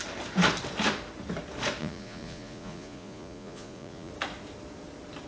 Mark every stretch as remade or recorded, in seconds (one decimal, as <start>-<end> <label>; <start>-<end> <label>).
0.0-1.8 recorded; 1.8-4.1 remade; 4.1-5.3 recorded